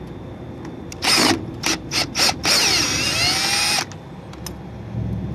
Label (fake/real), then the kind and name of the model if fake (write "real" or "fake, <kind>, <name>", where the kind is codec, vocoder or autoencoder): real